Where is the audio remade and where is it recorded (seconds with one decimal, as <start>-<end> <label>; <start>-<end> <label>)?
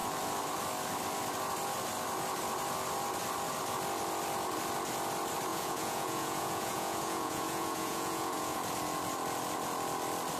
0.0-5.5 recorded; 5.5-8.6 remade; 8.6-10.4 recorded